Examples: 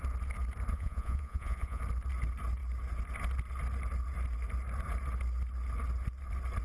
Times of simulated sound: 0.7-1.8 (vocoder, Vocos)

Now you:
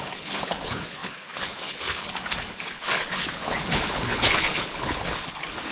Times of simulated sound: 0.0-5.7 (codec, HILCodec)

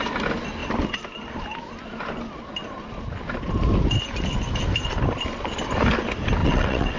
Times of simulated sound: 6.4-7.0 (vocoder, WaveNeXt)

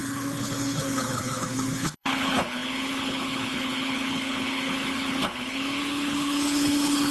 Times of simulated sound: 0.0-7.1 (codec, HILCodec)

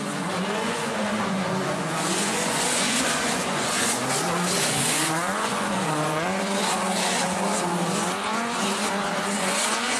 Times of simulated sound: 0.0-4.0 (vocoder, Vocos); 4.6-10.0